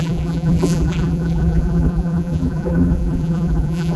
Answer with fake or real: fake